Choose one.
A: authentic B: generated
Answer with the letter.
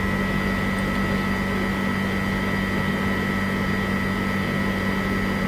A